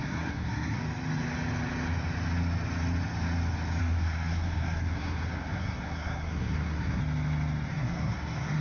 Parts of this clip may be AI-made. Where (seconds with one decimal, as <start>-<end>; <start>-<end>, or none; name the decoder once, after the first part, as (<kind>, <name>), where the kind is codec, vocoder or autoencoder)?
0.0-0.8 (codec, SNAC); 3.8-7.0; 7.7-8.6